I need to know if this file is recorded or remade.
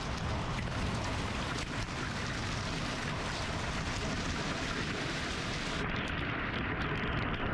recorded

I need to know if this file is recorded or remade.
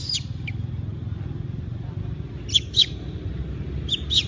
recorded